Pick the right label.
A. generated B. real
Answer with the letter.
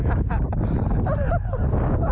B